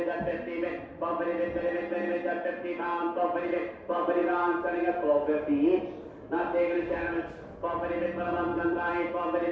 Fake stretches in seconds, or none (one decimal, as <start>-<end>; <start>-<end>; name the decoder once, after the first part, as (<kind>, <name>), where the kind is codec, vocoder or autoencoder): 8.5-9.5 (vocoder, BigVGAN v2)